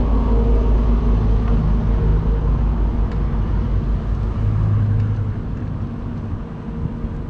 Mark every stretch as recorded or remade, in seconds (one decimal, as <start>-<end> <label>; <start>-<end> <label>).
0.0-7.3 recorded